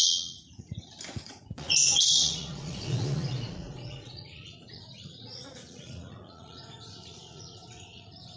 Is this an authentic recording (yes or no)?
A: no